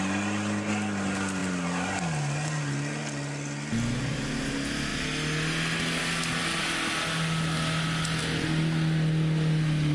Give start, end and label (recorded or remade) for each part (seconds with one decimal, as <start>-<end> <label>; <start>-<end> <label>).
0.0-9.9 recorded